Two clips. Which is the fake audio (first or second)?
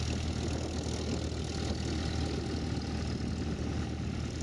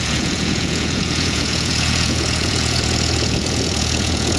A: second